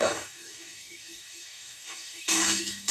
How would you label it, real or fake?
fake